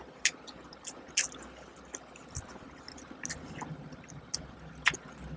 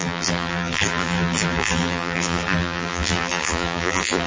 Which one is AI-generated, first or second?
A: second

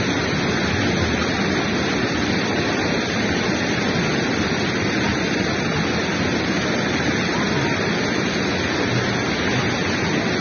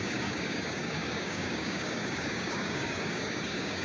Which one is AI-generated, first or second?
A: second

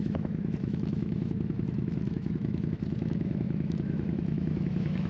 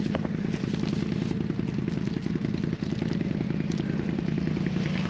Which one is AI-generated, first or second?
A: first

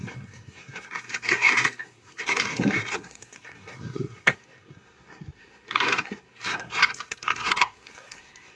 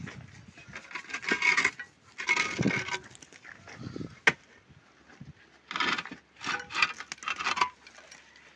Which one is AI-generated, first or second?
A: first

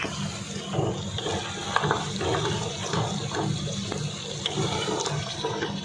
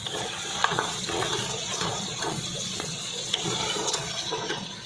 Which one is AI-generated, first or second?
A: second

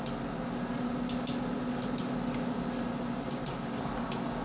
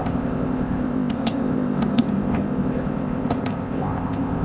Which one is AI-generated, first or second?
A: second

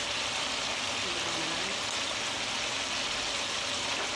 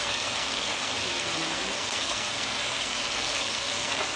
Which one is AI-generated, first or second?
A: second